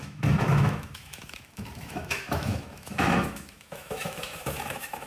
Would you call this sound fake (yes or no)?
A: yes